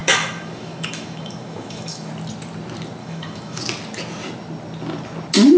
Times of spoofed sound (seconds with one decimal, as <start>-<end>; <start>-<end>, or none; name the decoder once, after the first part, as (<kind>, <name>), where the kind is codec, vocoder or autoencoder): 0.0-2.1 (autoencoder, DAC-VAE); 3.0-3.6